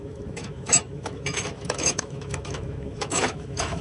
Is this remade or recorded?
remade